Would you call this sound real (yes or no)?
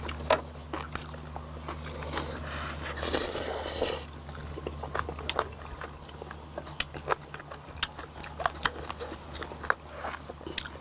yes